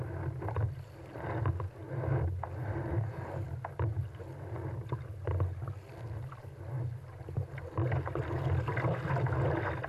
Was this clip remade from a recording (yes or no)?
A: no